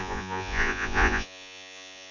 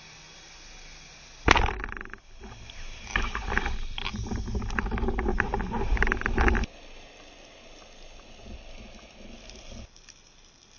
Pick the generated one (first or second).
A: first